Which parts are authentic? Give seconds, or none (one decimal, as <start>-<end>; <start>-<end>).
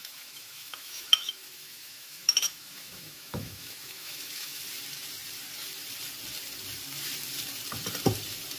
4.6-8.6